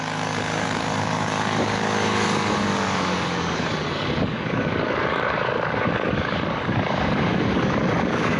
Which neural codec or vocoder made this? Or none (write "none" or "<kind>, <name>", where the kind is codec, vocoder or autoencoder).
codec, DAC